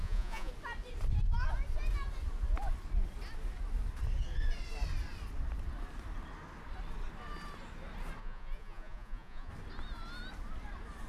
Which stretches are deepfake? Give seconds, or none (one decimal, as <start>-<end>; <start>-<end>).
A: 0.0-0.5; 8.2-9.5